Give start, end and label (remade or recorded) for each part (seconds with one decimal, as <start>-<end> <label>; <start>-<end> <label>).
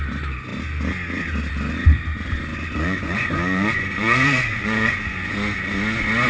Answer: 0.0-2.5 recorded; 2.5-5.3 remade; 5.3-6.3 recorded